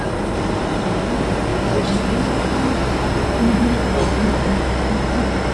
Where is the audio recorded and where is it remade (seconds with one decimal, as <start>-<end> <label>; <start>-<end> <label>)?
0.0-5.5 recorded